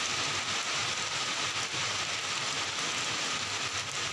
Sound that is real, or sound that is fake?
real